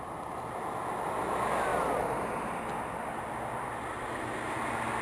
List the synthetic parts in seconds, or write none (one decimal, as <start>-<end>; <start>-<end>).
none